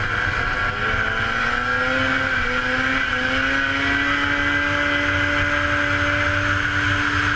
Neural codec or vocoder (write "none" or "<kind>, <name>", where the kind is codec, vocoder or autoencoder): none